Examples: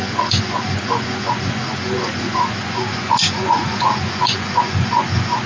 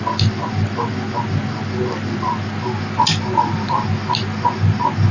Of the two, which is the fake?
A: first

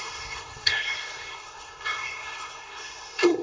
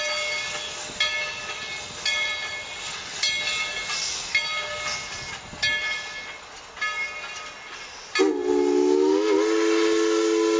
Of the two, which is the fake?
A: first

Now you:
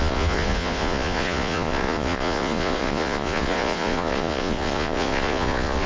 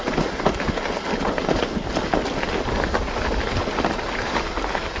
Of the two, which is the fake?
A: first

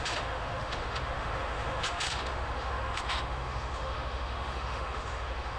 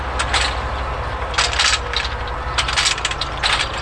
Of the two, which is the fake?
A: first